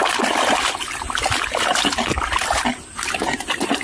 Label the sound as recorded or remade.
recorded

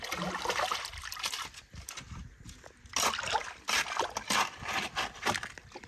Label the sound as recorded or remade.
recorded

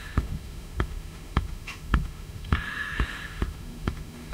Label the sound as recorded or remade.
remade